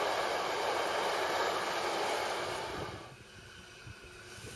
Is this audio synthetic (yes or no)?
no